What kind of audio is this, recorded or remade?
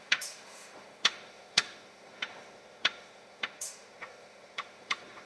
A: remade